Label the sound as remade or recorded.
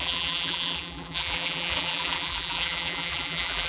remade